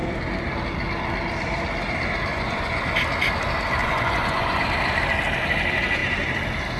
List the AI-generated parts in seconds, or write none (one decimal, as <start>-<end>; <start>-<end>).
2.3-2.8; 3.8-4.6